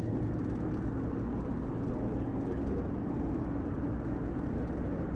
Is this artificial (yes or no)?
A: no